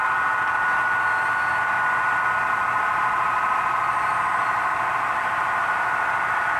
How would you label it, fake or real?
real